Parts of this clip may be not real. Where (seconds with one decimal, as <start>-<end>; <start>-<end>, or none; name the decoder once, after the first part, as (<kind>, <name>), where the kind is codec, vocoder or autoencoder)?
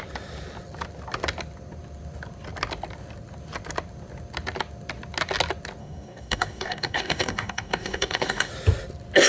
5.8-8.5 (codec, DAC)